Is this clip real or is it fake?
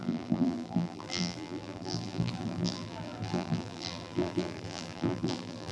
fake